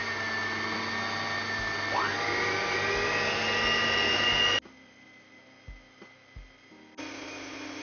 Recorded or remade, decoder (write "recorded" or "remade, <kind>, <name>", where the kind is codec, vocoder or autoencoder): recorded